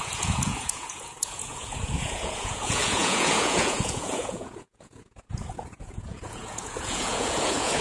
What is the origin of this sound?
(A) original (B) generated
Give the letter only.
B